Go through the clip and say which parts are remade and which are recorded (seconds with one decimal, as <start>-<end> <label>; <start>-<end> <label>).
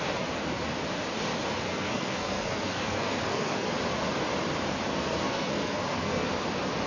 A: 0.0-1.7 recorded; 1.7-3.7 remade; 3.7-4.9 recorded; 4.9-6.3 remade; 6.3-6.9 recorded